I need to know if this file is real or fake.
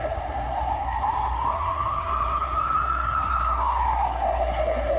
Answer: fake